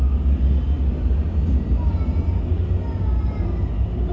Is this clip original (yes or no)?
yes